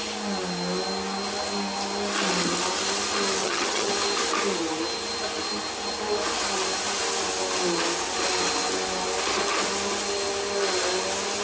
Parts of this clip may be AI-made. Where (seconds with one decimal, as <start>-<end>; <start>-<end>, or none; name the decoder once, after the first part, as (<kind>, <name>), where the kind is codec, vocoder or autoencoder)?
3.4-3.9 (vocoder, HiFi-GAN)